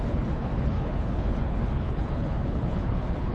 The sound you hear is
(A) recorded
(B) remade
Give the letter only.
B